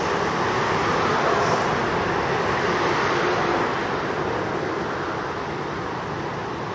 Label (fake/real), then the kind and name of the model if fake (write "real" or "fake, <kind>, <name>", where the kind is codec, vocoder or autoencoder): real